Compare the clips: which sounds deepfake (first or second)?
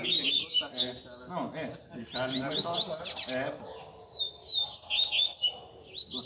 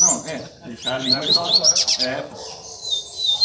second